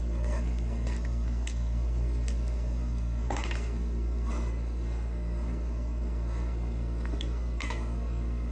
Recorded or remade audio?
remade